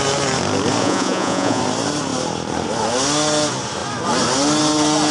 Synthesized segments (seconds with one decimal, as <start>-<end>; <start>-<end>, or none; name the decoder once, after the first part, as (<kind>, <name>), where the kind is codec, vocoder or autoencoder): 0.8-1.6 (vocoder, Vocos)